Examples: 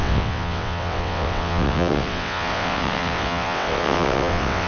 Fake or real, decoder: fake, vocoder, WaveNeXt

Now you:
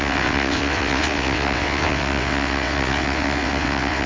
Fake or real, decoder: fake, vocoder, WaveNeXt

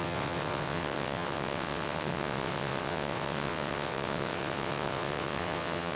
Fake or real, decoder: fake, vocoder, WaveNeXt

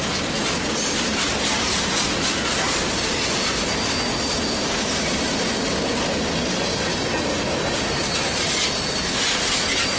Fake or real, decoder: real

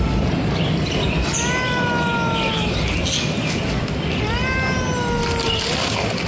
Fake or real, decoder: real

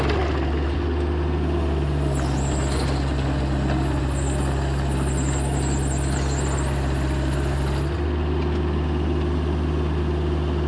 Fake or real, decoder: real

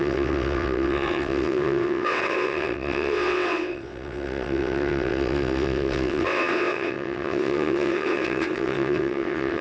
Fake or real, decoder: fake, vocoder, WaveNeXt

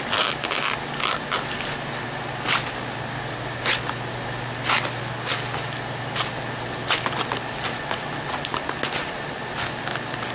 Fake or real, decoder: real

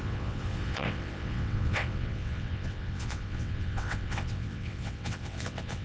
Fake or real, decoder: fake, vocoder, WaveNeXt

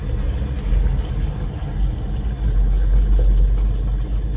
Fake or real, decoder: real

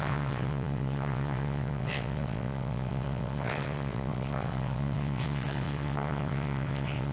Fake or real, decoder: fake, vocoder, WaveNeXt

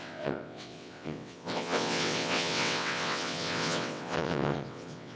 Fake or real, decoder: fake, vocoder, WaveNeXt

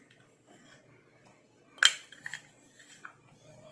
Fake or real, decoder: real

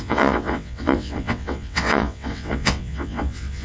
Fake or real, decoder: fake, vocoder, WaveNeXt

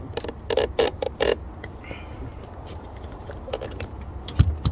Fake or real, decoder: real